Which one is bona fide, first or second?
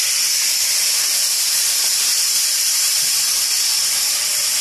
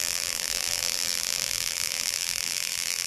first